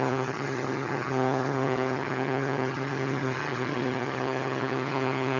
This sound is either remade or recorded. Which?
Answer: remade